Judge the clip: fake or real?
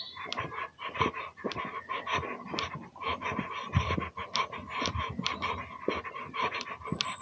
real